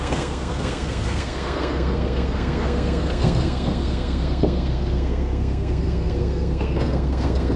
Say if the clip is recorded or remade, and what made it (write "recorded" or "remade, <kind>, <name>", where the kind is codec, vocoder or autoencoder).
remade, codec, SNAC